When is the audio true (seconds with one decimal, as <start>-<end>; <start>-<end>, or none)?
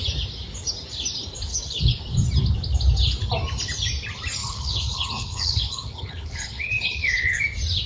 0.0-1.5; 2.0-4.4; 7.4-7.9